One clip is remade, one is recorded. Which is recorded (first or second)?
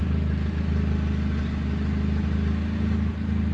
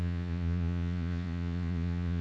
first